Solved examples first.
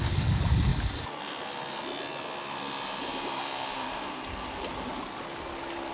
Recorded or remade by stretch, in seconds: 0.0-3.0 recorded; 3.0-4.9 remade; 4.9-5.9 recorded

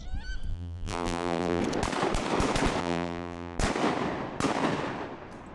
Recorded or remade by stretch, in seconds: 0.0-0.5 recorded; 0.5-1.6 remade; 1.6-2.8 recorded; 2.8-3.6 remade; 3.6-5.5 recorded

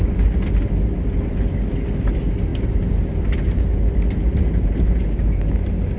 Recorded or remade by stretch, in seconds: 0.0-2.5 recorded; 2.5-5.5 remade; 5.5-6.0 recorded

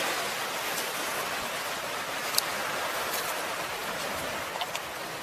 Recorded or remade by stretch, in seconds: 0.0-0.9 recorded; 0.9-2.4 remade; 2.4-5.2 recorded

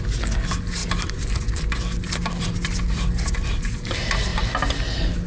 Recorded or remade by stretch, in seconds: 0.0-0.8 recorded; 0.8-3.6 remade; 3.6-4.3 recorded; 4.3-4.8 remade; 4.8-5.3 recorded

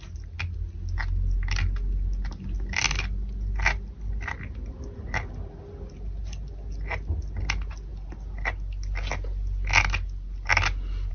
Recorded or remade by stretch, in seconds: 0.0-11.1 recorded